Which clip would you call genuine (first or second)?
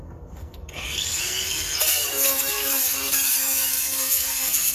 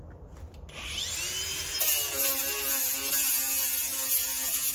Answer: second